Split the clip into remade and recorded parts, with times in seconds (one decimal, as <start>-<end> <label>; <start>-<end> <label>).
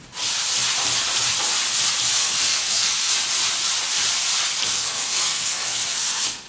0.0-2.1 recorded; 2.1-3.1 remade; 3.1-4.7 recorded; 4.7-6.5 remade